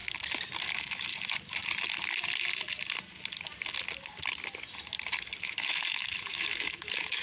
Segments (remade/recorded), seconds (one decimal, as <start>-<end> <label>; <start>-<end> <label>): 0.0-0.6 recorded; 0.6-1.1 remade; 1.1-5.4 recorded; 5.4-7.2 remade